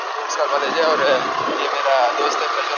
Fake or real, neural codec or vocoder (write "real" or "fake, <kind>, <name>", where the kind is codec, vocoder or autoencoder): real